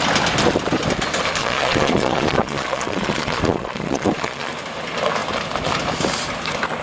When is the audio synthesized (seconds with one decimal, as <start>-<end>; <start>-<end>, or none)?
1.4-4.5